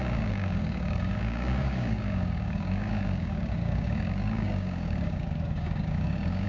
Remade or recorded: remade